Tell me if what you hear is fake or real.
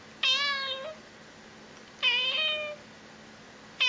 real